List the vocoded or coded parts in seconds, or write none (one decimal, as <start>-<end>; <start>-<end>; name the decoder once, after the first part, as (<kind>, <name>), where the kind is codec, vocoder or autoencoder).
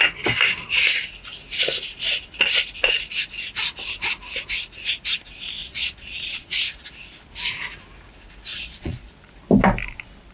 5.6-6.6 (vocoder, Vocos); 8.5-9.1